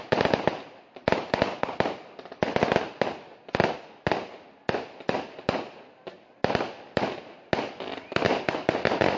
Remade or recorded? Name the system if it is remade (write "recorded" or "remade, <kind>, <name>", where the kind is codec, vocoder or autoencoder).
recorded